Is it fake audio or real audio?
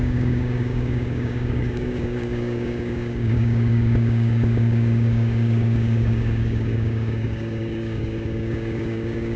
fake